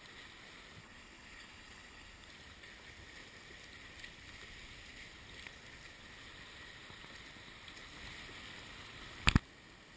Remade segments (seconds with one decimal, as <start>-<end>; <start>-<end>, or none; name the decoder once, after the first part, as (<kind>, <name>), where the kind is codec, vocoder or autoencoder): 0.8-2.3 (codec, HILCodec)